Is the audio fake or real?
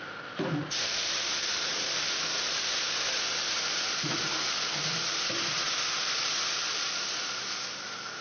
real